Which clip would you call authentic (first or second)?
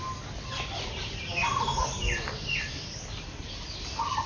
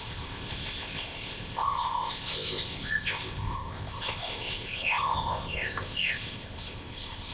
first